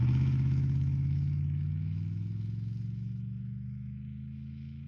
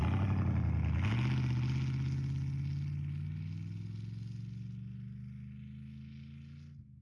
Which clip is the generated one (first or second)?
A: first